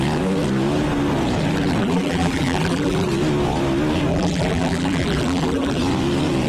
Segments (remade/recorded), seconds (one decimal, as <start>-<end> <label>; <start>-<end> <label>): 0.0-1.8 recorded; 1.8-3.1 remade; 3.1-4.1 recorded; 4.1-5.8 remade; 5.8-6.5 recorded